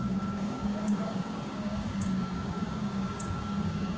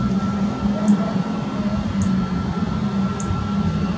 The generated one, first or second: first